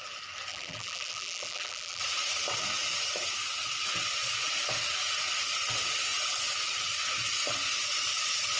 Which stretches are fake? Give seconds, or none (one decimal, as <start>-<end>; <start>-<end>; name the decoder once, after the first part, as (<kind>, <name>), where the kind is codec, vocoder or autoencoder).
0.5-2.0 (vocoder, BigVGAN v2)